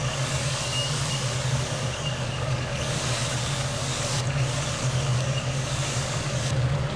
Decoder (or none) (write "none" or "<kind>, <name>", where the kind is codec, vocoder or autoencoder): codec, DAC